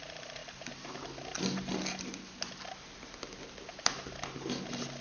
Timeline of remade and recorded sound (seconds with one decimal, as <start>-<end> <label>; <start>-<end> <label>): 0.0-5.0 recorded